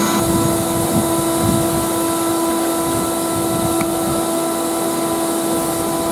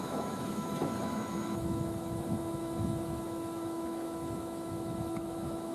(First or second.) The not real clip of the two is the second